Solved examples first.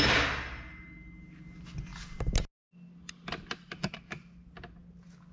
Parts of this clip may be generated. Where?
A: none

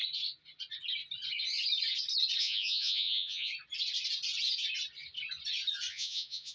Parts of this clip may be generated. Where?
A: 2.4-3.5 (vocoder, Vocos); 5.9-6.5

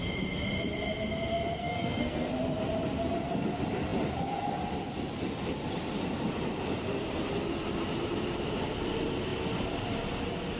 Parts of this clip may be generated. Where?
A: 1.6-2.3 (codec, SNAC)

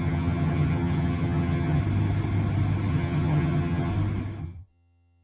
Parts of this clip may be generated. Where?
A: 0.0-1.8 (vocoder, HiFi-GAN); 2.9-3.9; 4.4-5.2

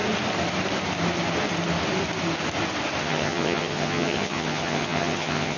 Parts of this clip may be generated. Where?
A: 3.0-5.6 (vocoder, HiFi-GAN)

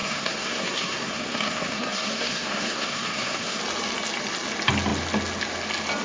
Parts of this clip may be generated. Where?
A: 0.0-3.6 (codec, SNAC)

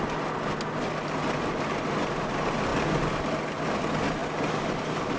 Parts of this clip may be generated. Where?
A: none